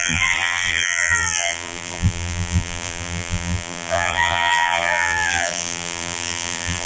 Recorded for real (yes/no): no